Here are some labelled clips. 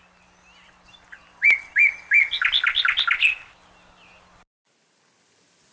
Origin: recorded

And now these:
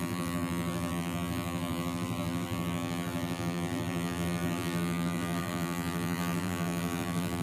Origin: remade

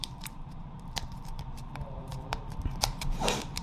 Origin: remade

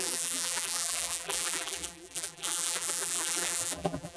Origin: remade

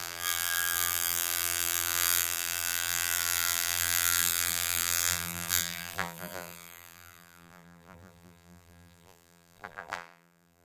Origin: remade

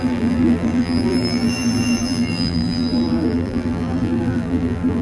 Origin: remade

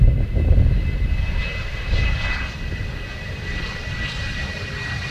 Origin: recorded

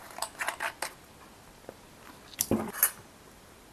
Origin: recorded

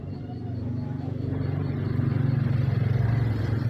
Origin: remade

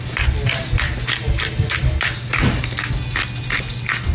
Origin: recorded